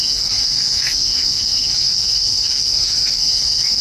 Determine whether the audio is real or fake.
fake